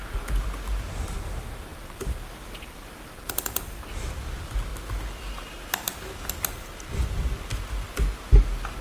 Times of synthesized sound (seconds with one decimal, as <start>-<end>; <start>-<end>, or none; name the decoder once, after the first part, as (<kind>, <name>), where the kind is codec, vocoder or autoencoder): none